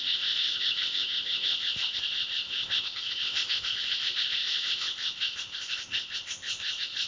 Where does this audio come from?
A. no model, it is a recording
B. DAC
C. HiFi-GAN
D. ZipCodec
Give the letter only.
D